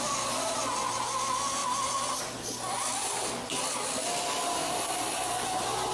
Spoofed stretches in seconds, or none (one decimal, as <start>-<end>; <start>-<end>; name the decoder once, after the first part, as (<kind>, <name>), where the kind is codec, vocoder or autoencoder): none